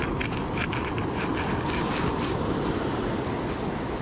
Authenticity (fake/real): real